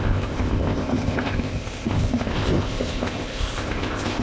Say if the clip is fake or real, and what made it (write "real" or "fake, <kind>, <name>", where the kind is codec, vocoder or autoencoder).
fake, codec, ZipCodec